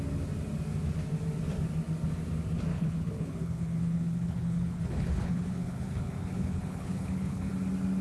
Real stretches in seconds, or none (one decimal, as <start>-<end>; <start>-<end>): 0.0-2.7; 7.5-8.0